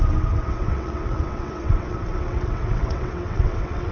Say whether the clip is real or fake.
fake